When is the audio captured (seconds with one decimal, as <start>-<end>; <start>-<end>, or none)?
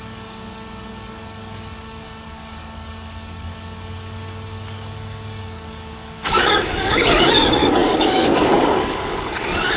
none